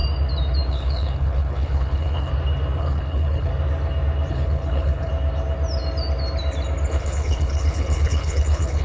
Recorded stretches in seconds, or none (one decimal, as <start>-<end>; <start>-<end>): 0.0-0.7; 2.3-2.8; 3.5-4.3; 5.1-6.9